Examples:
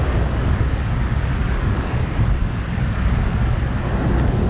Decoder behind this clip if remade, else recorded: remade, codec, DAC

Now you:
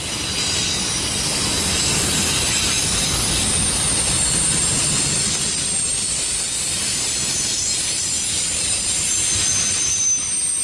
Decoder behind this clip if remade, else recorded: recorded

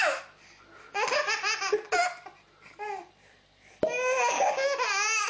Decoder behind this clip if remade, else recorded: recorded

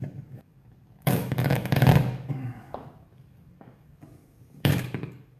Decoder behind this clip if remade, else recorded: remade, codec, DAC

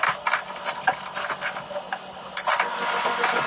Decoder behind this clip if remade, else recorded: recorded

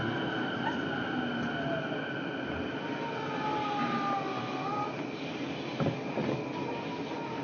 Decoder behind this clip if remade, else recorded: recorded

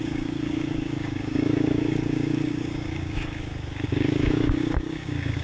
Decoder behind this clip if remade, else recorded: remade, codec, DAC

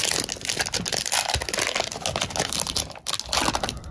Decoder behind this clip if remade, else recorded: recorded